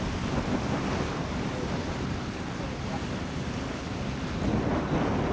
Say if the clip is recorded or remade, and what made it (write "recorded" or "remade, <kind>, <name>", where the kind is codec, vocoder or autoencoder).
recorded